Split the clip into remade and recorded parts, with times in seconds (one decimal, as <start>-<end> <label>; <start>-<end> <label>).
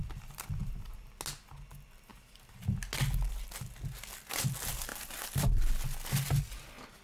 0.0-0.6 recorded; 0.6-1.2 remade; 1.2-2.1 recorded; 2.1-2.8 remade; 2.8-7.0 recorded